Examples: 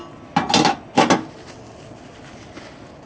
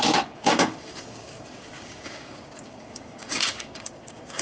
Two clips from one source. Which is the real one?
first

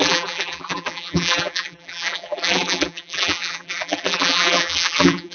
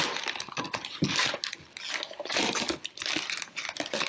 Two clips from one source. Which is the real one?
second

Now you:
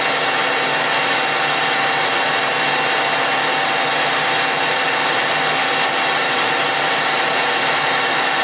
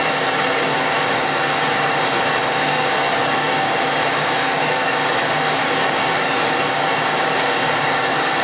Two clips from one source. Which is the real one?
first